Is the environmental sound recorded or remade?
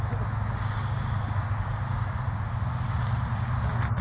recorded